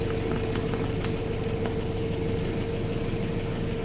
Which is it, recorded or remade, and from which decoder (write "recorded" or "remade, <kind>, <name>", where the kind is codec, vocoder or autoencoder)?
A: recorded